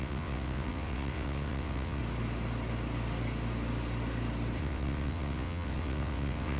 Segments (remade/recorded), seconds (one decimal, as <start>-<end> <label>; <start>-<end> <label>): 0.0-2.0 remade; 2.0-4.6 recorded; 4.6-6.6 remade